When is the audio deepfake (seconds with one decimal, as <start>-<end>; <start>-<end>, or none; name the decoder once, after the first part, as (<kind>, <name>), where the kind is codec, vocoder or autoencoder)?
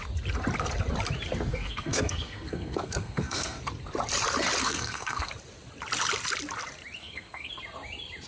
1.5-3.6 (codec, SNAC); 4.6-5.3; 7.0-7.5